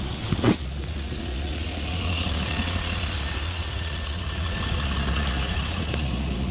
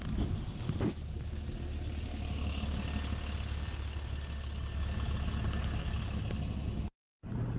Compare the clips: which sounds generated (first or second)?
first